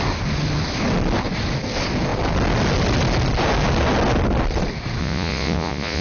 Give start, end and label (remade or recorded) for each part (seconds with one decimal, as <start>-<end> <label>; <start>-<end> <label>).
0.0-5.0 recorded; 5.0-6.0 remade